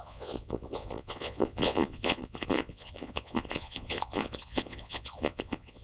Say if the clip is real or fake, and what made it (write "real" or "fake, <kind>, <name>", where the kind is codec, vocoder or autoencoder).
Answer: fake, vocoder, Vocos